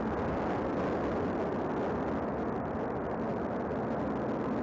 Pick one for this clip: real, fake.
real